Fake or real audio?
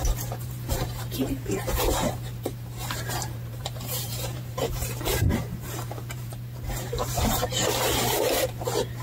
fake